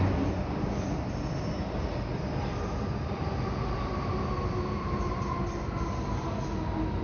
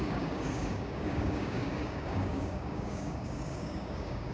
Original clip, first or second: first